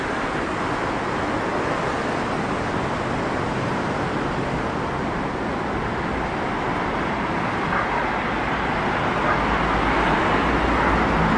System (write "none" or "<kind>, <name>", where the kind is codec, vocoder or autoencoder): none